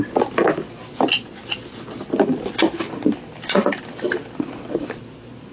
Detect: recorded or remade recorded